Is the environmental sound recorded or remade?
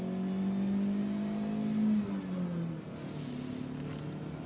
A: recorded